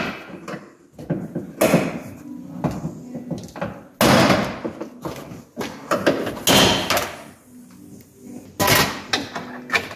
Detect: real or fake real